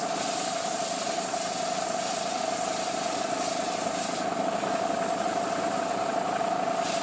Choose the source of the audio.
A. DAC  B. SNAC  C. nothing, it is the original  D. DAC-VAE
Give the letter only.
C